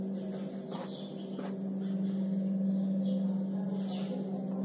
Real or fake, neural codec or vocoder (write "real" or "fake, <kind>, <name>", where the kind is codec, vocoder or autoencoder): real